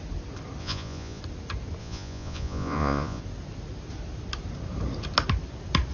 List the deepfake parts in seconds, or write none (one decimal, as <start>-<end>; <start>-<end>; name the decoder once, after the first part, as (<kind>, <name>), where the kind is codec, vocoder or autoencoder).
0.6-1.2 (vocoder, Vocos); 1.8-3.2